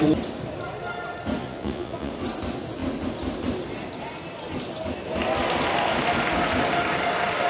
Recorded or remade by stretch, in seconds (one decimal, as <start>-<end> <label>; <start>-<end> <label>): 0.0-1.4 recorded; 1.4-2.1 remade; 2.1-7.5 recorded